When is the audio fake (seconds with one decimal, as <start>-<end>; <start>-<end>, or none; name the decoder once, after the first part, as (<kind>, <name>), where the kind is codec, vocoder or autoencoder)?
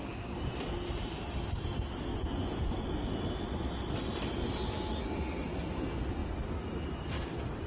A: 2.1-2.9 (vocoder, Vocos)